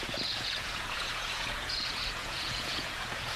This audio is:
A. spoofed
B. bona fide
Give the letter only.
A